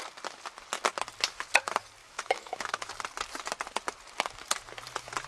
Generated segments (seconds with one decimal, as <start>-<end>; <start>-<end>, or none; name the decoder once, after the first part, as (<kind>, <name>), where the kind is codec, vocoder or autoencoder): 2.0-2.9 (autoencoder, DAC-VAE)